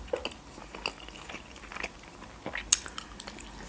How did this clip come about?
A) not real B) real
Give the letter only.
B